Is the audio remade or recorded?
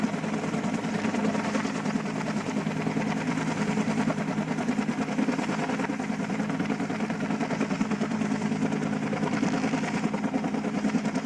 recorded